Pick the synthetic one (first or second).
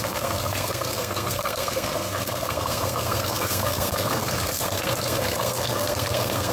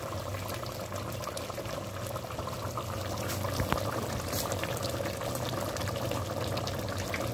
first